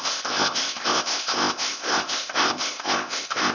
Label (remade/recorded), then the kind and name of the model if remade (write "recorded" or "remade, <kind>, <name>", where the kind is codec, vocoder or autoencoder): remade, codec, ZipCodec